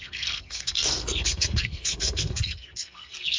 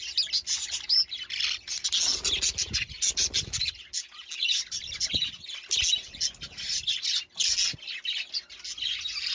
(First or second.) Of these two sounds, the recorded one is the second